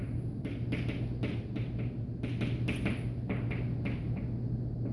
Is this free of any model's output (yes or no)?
yes